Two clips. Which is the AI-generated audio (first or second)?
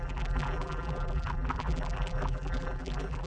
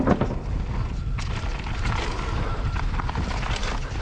first